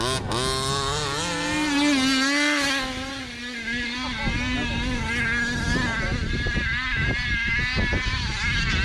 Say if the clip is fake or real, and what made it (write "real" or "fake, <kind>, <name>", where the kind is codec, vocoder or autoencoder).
real